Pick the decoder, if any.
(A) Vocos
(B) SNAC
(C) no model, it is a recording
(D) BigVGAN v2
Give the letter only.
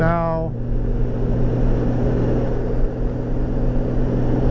C